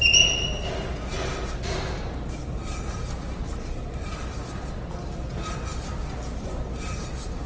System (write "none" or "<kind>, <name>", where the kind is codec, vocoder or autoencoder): none